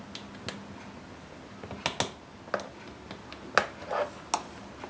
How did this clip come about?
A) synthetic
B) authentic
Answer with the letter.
B